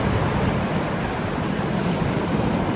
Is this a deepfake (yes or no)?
no